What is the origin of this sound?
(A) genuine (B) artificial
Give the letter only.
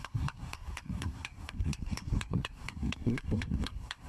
B